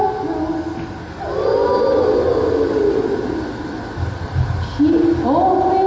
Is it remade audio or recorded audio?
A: recorded